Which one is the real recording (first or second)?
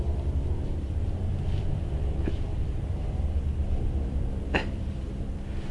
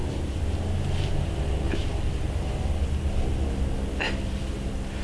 second